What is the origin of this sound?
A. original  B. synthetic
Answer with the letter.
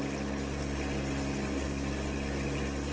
A